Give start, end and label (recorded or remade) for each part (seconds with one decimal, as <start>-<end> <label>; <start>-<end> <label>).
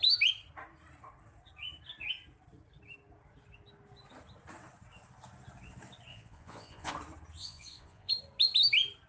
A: 0.0-6.1 recorded; 6.1-6.9 remade; 6.9-7.4 recorded; 7.4-8.1 remade; 8.1-9.1 recorded